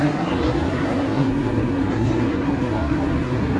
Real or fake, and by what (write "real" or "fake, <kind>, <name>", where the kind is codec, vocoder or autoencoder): fake, codec, SNAC